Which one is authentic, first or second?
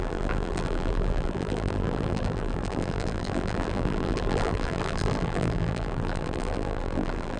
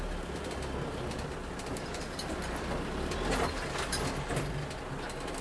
second